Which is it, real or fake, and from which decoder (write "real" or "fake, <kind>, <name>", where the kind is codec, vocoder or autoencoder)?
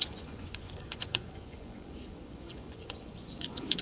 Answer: fake, vocoder, Vocos